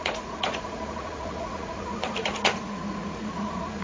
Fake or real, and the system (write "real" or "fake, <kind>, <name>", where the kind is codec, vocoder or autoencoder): fake, vocoder, Vocos